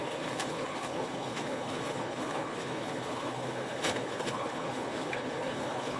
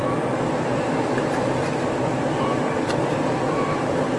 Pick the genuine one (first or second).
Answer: second